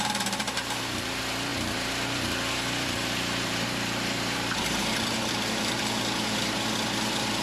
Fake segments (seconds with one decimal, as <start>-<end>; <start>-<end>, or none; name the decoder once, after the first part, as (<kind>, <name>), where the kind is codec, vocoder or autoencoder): 0.0-7.4 (vocoder, BigVGAN v2)